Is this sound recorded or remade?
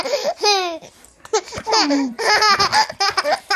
recorded